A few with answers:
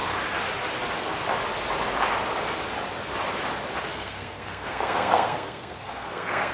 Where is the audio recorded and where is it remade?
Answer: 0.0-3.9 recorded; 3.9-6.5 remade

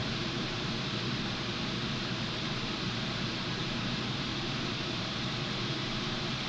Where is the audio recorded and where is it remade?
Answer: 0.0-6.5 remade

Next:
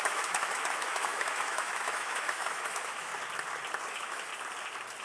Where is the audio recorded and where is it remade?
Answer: 0.0-3.1 remade; 3.1-3.9 recorded; 3.9-4.3 remade; 4.3-5.0 recorded

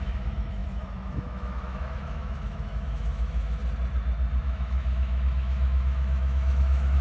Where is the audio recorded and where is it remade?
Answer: 0.0-3.6 remade; 3.6-4.4 recorded; 4.4-7.0 remade

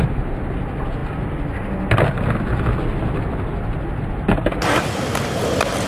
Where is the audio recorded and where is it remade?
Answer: 0.0-5.9 recorded